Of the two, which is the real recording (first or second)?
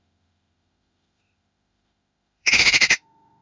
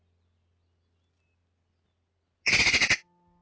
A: second